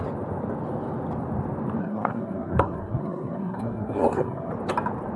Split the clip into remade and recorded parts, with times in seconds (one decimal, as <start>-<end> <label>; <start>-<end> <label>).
0.0-1.8 recorded; 1.8-4.5 remade; 4.5-5.2 recorded